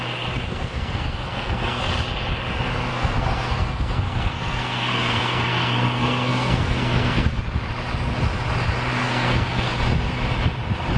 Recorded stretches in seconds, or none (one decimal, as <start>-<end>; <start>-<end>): 0.0-0.5; 1.9-2.9; 7.4-9.0; 9.7-11.0

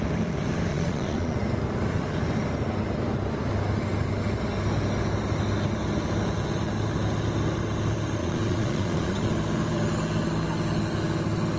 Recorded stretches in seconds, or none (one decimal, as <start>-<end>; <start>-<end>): 0.0-0.7; 1.4-8.2; 9.3-11.6